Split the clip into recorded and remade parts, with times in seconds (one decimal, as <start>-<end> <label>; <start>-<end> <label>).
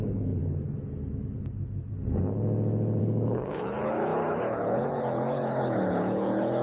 0.0-0.4 remade; 0.4-3.0 recorded; 3.0-6.6 remade